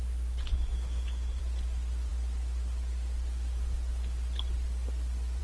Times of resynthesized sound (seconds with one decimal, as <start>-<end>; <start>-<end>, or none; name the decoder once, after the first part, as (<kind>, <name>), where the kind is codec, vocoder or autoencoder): 0.5-1.4 (codec, SNAC)